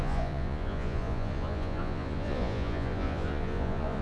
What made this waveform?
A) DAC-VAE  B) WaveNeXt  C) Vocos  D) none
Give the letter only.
C